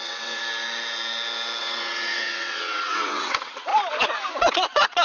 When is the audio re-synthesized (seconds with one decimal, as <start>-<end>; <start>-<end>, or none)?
0.0-0.4; 1.6-3.7; 4.3-5.0